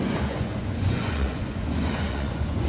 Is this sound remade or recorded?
remade